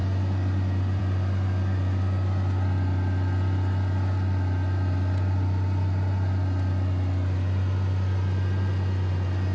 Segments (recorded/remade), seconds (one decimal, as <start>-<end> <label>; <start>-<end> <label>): 0.0-9.5 recorded